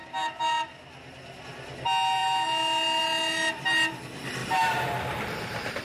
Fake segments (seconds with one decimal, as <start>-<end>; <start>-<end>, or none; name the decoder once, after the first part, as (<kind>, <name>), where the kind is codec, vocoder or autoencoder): none